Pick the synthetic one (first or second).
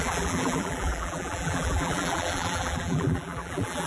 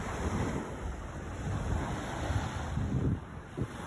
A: first